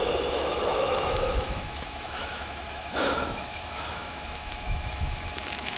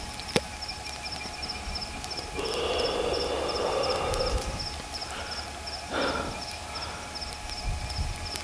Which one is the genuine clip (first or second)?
second